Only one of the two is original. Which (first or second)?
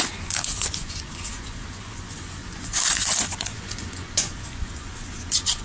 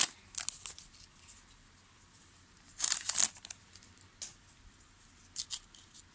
second